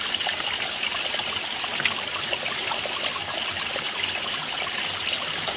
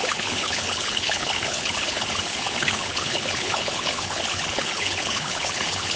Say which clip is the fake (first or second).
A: second